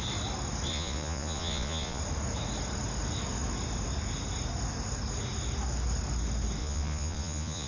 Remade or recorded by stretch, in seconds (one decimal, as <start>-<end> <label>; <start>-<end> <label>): 0.0-0.7 recorded; 0.7-2.0 remade; 2.0-6.6 recorded; 6.6-7.7 remade